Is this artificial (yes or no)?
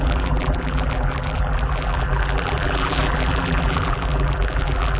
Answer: yes